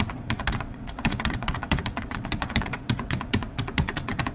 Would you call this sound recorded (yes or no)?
no